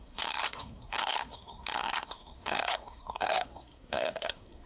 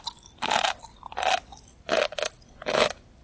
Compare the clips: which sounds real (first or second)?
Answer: second